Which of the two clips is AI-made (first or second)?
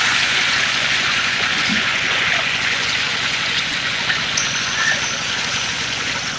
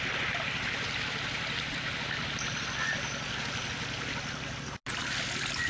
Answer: first